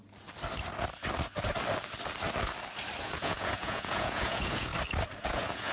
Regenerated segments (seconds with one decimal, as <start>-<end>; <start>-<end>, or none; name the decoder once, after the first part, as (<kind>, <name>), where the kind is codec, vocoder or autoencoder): 3.0-4.7 (vocoder, Vocos); 5.2-5.7